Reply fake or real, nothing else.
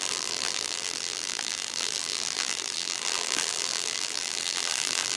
fake